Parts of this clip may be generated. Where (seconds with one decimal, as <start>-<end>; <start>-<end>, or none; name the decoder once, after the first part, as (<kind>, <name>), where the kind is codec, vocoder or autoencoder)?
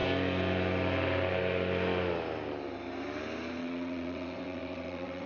3.6-5.3 (vocoder, WaveNeXt)